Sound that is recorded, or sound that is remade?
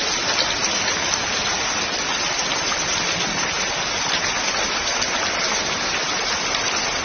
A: recorded